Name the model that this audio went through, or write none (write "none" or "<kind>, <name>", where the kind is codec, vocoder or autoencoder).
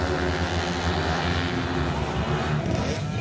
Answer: none